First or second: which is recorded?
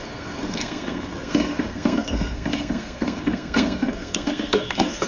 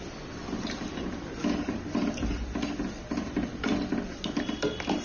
second